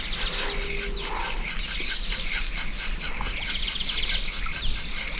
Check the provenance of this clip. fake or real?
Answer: real